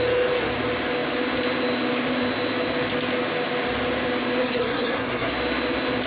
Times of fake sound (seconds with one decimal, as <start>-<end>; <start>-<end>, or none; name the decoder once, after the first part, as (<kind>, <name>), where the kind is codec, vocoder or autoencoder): 4.4-5.3 (codec, SNAC)